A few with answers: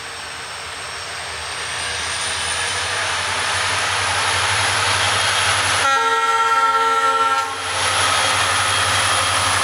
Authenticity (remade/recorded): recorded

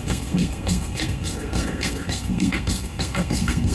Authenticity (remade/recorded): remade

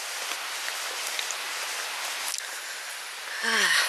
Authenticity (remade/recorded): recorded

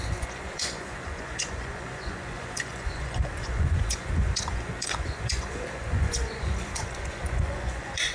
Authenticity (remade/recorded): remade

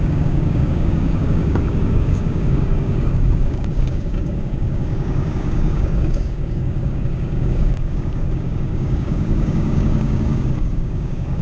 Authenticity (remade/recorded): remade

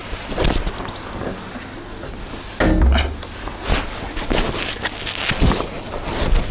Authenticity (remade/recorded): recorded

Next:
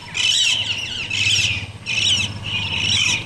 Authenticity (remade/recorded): recorded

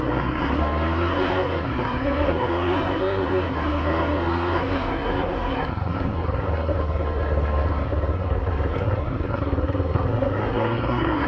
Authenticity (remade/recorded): remade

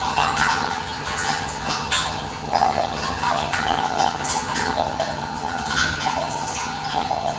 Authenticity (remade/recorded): remade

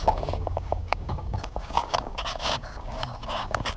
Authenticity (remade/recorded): remade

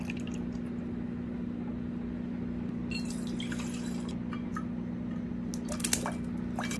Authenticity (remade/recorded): recorded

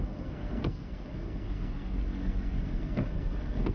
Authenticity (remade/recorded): remade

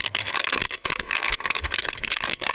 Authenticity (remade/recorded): remade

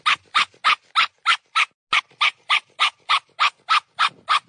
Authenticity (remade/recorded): recorded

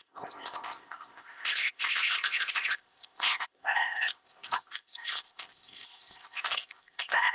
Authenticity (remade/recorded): remade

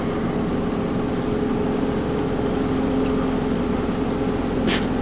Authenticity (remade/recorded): recorded